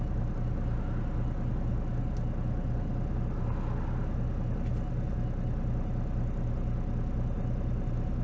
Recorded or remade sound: recorded